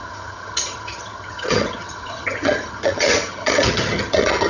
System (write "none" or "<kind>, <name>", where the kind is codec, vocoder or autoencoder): vocoder, HiFi-GAN